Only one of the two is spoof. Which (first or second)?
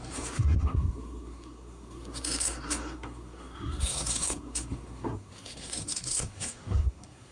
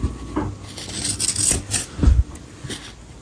first